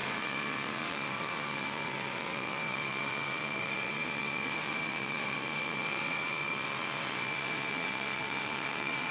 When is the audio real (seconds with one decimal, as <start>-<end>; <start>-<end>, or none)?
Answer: none